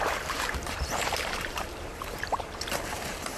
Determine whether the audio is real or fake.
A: fake